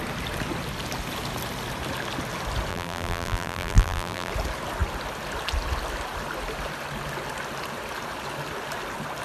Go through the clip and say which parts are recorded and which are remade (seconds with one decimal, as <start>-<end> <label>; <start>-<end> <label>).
0.0-2.7 recorded; 2.7-4.3 remade; 4.3-9.2 recorded